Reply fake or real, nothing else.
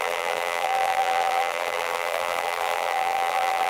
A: fake